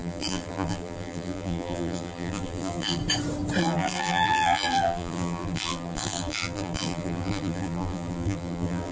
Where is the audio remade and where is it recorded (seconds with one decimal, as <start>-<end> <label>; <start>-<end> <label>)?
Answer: 0.0-3.0 remade; 3.0-3.6 recorded; 3.6-8.9 remade